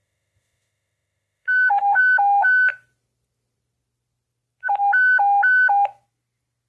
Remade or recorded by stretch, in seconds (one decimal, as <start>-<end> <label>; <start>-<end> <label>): 0.0-2.0 remade; 2.0-6.7 recorded